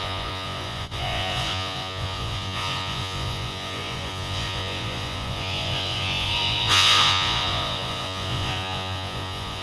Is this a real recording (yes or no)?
no